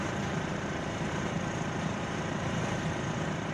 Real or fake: fake